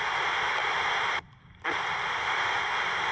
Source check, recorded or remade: recorded